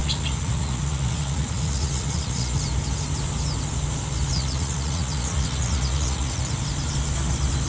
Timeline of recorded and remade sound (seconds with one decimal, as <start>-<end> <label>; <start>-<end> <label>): 0.0-2.6 remade; 2.6-4.3 recorded; 4.3-6.5 remade; 6.5-7.7 recorded